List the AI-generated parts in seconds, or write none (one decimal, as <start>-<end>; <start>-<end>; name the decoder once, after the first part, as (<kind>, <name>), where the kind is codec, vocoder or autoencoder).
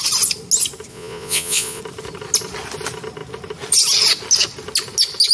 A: 0.9-1.8 (vocoder, Vocos)